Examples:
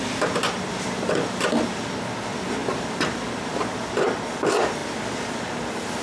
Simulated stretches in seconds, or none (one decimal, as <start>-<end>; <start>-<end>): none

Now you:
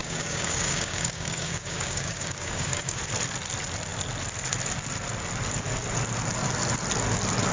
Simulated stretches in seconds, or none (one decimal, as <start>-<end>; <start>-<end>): 0.0-3.0

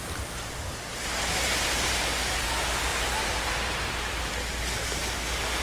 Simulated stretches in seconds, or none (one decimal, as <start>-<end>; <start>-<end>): 2.9-4.3

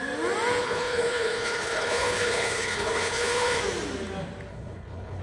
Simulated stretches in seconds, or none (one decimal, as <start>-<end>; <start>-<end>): 0.6-3.6; 4.5-5.2